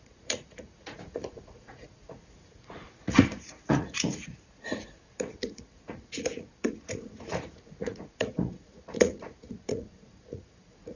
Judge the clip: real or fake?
fake